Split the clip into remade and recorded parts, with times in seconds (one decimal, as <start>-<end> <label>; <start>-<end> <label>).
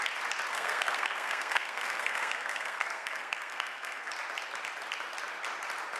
0.0-0.5 recorded; 0.5-4.1 remade; 4.1-6.0 recorded